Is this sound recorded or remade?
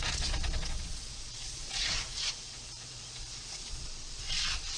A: remade